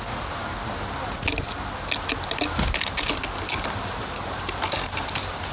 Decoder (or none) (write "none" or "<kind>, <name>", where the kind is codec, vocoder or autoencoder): none